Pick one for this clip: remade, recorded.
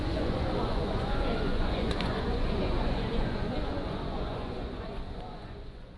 remade